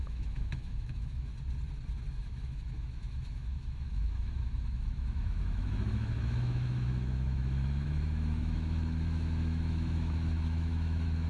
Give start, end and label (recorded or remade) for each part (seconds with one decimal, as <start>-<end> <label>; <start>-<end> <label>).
0.0-1.3 remade; 1.3-2.1 recorded; 2.1-11.3 remade